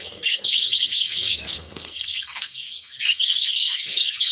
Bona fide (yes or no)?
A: no